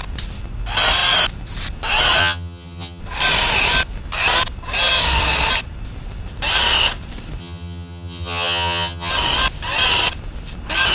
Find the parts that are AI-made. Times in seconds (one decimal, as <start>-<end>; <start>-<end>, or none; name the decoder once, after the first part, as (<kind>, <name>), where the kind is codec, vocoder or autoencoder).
2.2-3.0 (vocoder, HiFi-GAN); 7.4-9.1